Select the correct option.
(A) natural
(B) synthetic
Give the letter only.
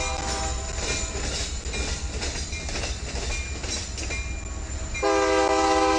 A